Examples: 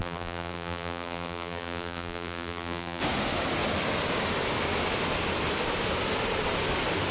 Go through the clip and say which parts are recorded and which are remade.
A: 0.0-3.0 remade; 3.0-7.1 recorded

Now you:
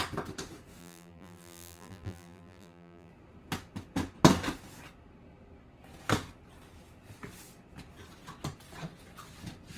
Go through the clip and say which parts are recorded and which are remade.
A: 0.0-0.8 recorded; 0.8-3.1 remade; 3.1-9.8 recorded

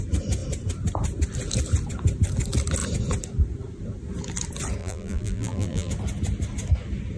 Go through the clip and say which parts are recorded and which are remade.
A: 0.0-4.8 recorded; 4.8-5.9 remade; 5.9-7.2 recorded